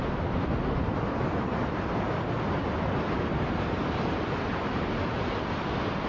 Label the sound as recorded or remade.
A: recorded